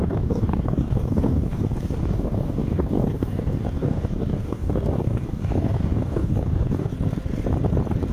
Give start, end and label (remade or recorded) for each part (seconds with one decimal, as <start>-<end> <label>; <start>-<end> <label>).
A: 0.0-6.9 remade; 6.9-8.1 recorded